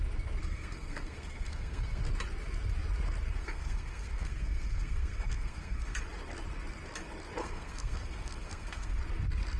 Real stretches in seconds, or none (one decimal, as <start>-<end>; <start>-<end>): 0.0-0.4; 2.0-3.4; 6.0-7.4; 9.0-9.6